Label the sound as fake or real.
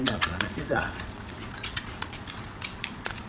fake